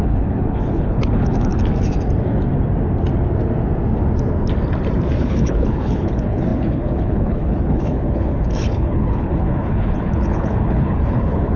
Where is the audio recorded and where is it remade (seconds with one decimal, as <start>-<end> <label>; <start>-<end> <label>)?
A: 0.0-1.5 remade; 1.5-5.2 recorded; 5.2-11.6 remade